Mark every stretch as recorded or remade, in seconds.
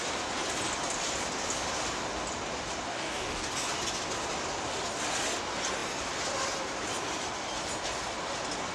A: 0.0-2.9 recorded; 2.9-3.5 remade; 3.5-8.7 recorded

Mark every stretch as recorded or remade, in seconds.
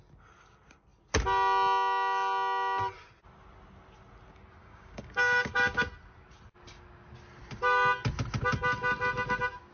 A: 0.0-4.6 recorded; 4.6-5.8 remade; 5.8-9.7 recorded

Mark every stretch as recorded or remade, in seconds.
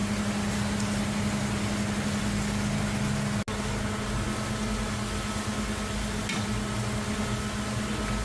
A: 0.0-8.2 recorded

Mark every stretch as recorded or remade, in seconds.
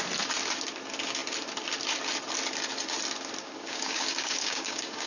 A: 0.0-3.4 recorded; 3.4-5.1 remade